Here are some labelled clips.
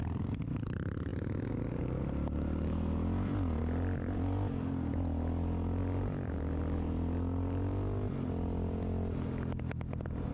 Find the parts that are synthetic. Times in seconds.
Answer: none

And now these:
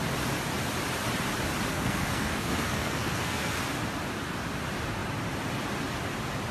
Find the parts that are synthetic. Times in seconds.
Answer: 1.7-3.6 (codec, SNAC)

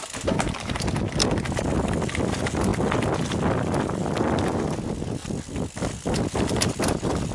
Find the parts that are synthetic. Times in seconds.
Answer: none

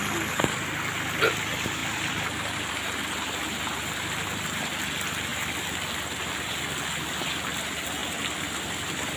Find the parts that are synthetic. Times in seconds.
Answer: none

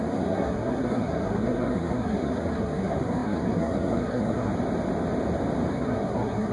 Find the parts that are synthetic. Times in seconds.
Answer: 0.0-4.5 (codec, SNAC); 5.7-6.5